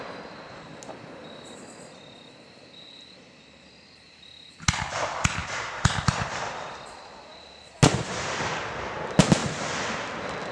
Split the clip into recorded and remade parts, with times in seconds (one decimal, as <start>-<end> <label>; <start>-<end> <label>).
0.0-10.5 recorded

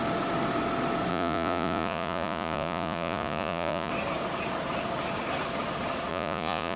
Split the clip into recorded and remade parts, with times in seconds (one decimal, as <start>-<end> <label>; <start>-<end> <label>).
0.0-1.1 recorded; 1.1-3.9 remade; 3.9-6.1 recorded; 6.1-6.8 remade

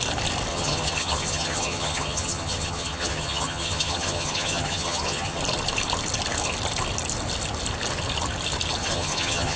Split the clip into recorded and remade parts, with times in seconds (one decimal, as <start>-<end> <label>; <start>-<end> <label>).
0.0-0.5 recorded; 0.5-5.4 remade; 5.4-8.8 recorded; 8.8-9.6 remade